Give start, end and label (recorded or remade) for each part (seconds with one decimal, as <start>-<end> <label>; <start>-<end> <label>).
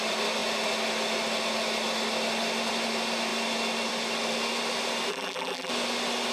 0.0-5.1 recorded; 5.1-5.7 remade; 5.7-6.3 recorded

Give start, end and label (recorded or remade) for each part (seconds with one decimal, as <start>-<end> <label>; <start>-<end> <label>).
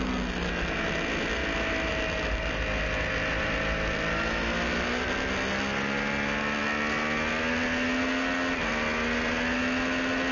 0.0-10.3 recorded